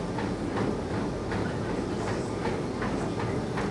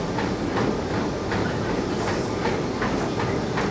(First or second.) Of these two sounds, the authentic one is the first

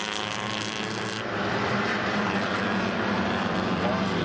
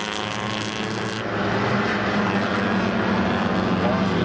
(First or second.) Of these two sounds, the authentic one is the second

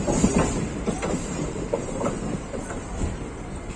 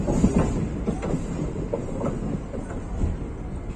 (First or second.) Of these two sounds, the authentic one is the second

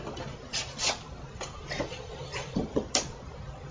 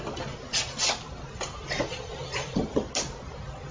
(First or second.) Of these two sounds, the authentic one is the second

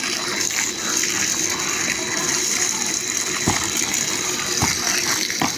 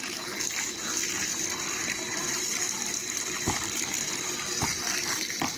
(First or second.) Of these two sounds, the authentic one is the first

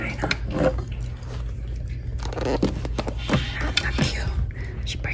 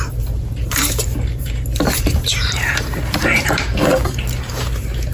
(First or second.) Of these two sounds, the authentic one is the first